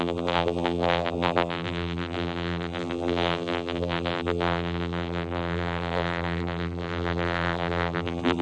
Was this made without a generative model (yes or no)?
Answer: no